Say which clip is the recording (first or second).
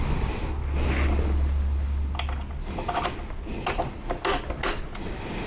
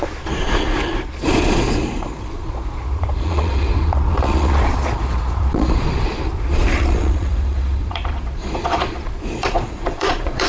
first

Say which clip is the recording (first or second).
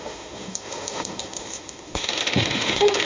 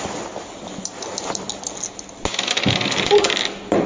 second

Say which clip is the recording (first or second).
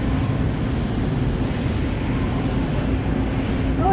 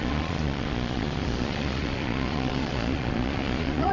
first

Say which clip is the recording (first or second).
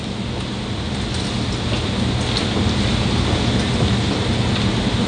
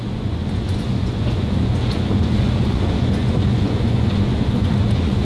first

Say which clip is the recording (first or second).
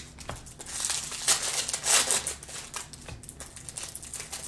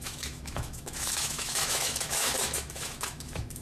first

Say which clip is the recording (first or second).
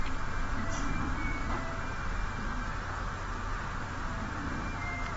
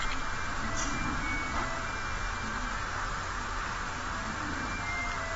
second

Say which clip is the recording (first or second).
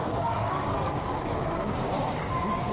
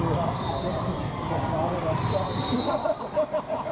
second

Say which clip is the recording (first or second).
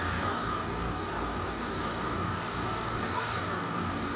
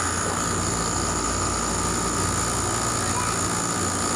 second